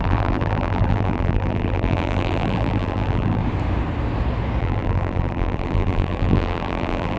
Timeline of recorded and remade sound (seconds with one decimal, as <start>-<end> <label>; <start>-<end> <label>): 0.0-3.4 remade; 3.4-4.6 recorded; 4.6-7.2 remade